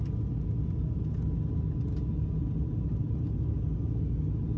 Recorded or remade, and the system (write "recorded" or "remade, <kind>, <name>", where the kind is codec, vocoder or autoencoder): recorded